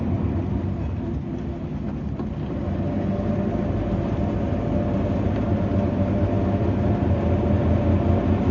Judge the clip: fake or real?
real